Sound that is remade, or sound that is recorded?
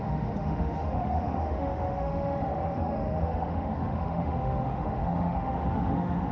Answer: remade